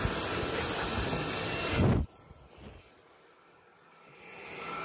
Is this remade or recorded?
recorded